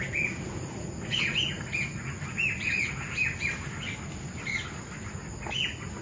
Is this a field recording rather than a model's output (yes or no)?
yes